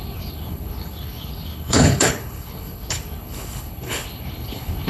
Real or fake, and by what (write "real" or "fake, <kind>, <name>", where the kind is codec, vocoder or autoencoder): fake, codec, HILCodec